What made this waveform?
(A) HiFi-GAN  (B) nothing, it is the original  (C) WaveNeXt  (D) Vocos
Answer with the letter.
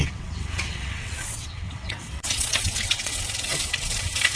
C